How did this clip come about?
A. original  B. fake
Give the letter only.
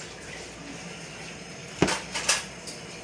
A